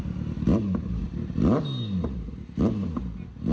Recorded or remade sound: recorded